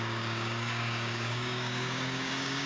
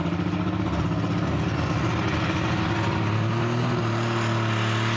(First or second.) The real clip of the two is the second